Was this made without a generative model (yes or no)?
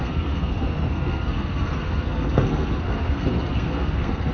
no